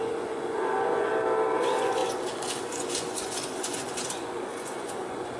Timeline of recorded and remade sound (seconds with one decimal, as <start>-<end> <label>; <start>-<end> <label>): 0.0-1.1 remade; 1.1-1.6 recorded; 1.6-5.4 remade